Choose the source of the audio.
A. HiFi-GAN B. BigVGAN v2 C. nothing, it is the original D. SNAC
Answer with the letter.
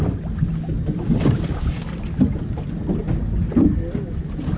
C